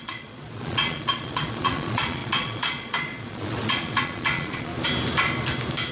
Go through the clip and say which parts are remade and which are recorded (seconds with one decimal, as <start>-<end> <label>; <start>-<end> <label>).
0.0-4.7 remade; 4.7-5.9 recorded